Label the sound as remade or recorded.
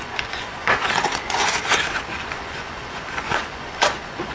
remade